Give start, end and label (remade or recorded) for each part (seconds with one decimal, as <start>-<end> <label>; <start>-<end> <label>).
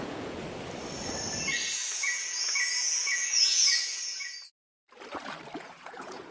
0.0-0.4 remade; 0.4-1.8 recorded; 1.8-4.4 remade; 4.4-5.6 recorded; 5.6-6.3 remade